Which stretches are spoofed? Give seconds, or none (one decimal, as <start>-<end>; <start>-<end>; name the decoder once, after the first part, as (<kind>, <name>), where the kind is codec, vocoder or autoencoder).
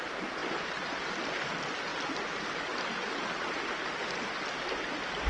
none